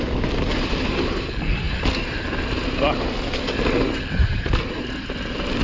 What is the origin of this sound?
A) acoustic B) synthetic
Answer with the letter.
A